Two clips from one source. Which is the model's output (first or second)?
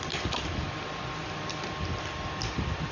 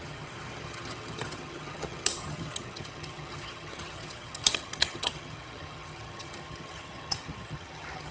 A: second